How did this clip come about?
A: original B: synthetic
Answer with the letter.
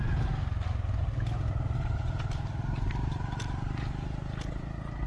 A